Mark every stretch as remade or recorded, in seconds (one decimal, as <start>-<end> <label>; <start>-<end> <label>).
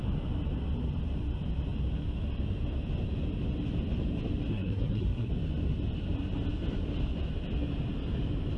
0.0-4.5 recorded; 4.5-5.3 remade; 5.3-8.6 recorded